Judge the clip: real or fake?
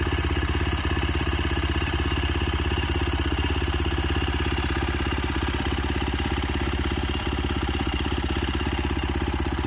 real